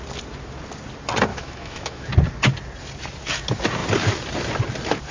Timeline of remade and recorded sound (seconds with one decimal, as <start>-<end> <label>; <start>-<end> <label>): 0.0-1.3 recorded; 1.3-2.1 remade; 2.1-5.1 recorded